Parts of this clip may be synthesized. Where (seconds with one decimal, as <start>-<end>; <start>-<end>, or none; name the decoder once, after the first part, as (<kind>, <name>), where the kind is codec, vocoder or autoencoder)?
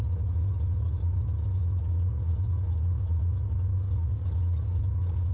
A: none